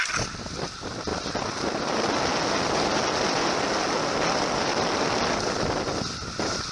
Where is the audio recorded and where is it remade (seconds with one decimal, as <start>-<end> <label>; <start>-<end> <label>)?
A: 0.0-6.7 recorded